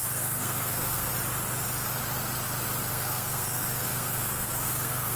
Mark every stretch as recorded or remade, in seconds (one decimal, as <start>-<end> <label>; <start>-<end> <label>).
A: 0.0-1.1 remade; 1.1-2.9 recorded; 2.9-5.2 remade